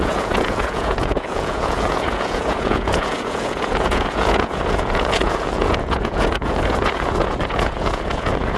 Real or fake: fake